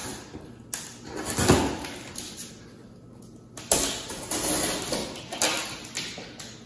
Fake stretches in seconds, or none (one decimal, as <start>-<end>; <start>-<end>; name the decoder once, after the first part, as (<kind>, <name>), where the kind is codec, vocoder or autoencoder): none